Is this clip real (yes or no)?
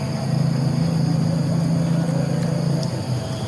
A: yes